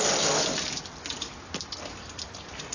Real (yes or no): yes